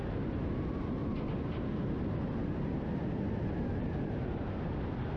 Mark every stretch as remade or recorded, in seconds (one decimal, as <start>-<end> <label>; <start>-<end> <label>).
0.0-5.2 recorded